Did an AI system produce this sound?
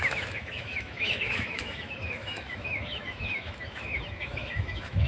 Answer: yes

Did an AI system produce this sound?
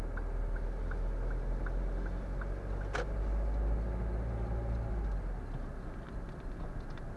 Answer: no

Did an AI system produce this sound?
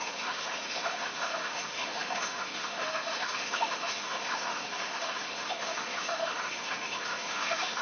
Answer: yes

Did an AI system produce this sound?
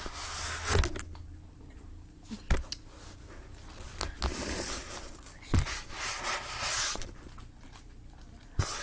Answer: no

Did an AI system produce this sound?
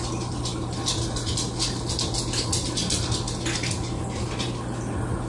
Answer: no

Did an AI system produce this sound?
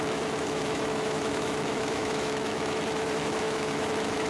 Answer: yes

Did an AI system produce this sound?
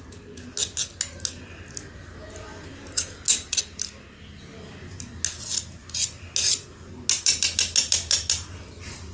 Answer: no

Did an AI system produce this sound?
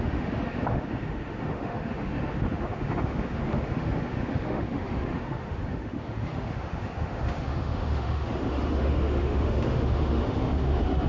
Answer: yes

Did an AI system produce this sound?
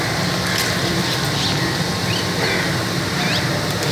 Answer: no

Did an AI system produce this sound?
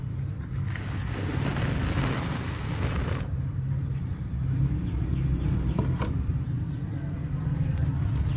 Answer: no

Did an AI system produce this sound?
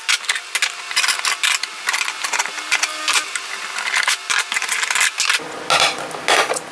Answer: no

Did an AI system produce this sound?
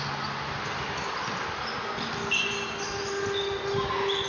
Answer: no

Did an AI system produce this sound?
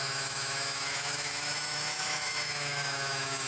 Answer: yes